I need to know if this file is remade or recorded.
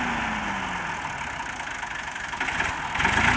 recorded